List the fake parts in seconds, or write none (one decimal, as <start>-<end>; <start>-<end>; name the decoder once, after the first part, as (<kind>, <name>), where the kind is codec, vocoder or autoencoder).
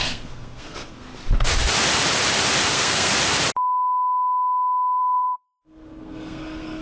0.0-1.1 (codec, SNAC); 2.7-3.1; 5.0-6.8